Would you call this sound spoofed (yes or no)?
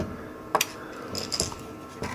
no